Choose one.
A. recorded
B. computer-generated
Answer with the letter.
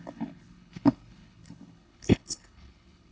B